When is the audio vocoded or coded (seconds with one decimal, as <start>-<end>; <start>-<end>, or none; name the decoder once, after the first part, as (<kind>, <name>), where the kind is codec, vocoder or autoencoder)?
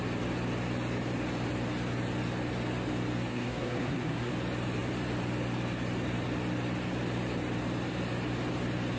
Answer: 3.3-4.3 (codec, SNAC)